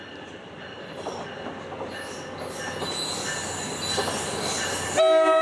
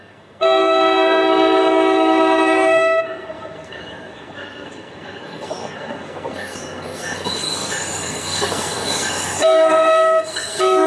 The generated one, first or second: second